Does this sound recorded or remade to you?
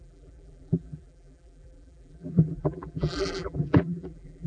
remade